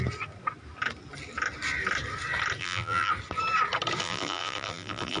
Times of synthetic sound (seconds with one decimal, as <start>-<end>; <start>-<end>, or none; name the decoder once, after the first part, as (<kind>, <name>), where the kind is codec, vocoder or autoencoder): 2.6-3.1 (vocoder, BigVGAN v2); 4.0-5.2